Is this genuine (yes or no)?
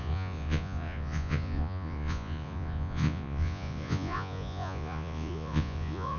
no